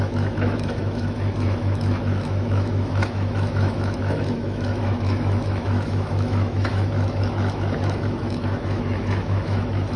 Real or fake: fake